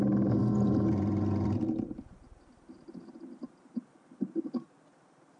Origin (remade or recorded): recorded